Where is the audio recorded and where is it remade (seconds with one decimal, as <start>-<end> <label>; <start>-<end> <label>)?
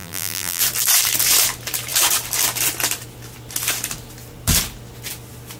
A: 0.0-0.6 remade; 0.6-5.6 recorded